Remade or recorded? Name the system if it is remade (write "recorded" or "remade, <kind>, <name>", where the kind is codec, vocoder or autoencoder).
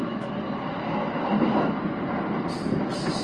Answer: recorded